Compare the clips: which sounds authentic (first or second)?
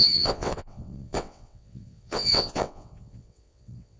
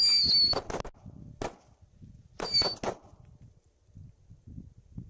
second